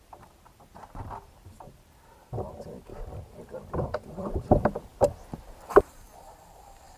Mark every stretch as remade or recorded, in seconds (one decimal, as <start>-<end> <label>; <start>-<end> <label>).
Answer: 0.0-2.9 remade; 2.9-4.1 recorded; 4.1-4.9 remade; 4.9-5.7 recorded; 5.7-7.0 remade